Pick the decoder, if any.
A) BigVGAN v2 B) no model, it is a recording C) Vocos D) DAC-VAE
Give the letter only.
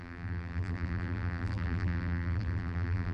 A